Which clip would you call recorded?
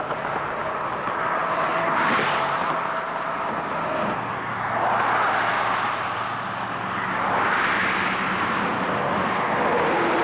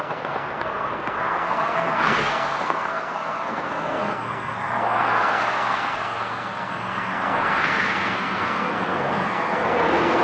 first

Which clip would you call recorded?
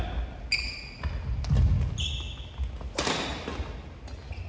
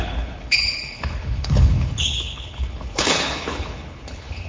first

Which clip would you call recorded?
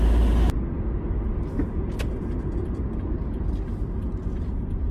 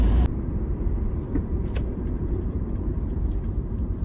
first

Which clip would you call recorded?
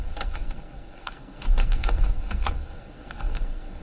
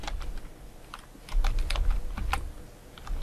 second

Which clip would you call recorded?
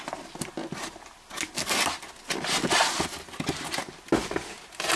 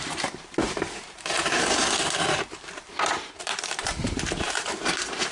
first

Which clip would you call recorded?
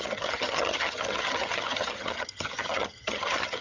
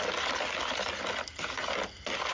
second